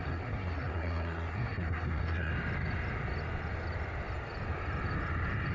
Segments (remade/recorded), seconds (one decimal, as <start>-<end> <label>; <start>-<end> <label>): 0.0-2.3 remade; 2.3-5.5 recorded